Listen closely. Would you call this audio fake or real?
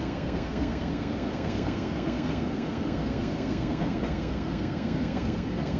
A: fake